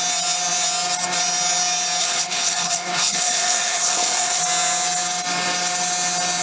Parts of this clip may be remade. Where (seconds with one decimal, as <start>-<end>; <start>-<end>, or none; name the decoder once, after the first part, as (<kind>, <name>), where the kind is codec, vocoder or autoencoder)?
2.0-4.4 (codec, HILCodec)